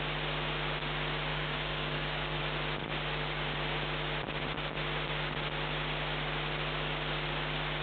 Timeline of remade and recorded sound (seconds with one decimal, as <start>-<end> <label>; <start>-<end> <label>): 0.0-1.3 recorded; 1.3-2.4 remade; 2.4-7.8 recorded